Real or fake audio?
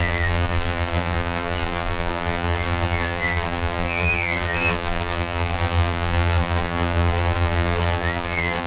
fake